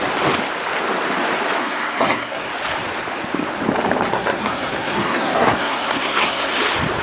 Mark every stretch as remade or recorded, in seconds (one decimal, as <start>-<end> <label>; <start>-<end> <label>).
0.0-1.6 recorded; 1.6-2.5 remade; 2.5-4.1 recorded; 4.1-6.5 remade; 6.5-7.0 recorded